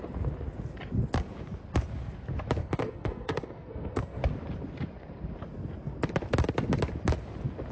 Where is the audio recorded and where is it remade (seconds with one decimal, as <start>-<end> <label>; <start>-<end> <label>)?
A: 0.0-2.6 recorded; 2.6-4.2 remade; 4.2-7.7 recorded